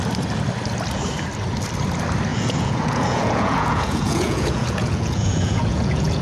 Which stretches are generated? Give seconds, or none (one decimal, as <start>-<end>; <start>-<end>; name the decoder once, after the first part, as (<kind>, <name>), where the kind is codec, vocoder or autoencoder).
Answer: 2.3-6.2 (vocoder, Vocos)